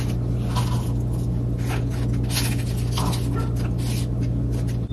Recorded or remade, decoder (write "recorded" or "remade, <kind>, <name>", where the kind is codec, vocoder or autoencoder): recorded